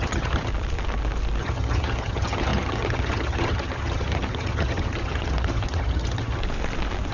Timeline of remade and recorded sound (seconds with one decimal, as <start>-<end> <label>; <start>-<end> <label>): 0.0-0.5 remade; 0.5-1.4 recorded; 1.4-6.4 remade; 6.4-7.1 recorded